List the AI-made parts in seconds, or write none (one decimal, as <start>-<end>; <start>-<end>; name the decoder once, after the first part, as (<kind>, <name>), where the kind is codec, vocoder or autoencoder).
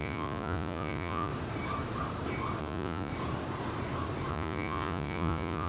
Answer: 0.0-1.3 (vocoder, Vocos); 2.6-3.1; 4.3-5.7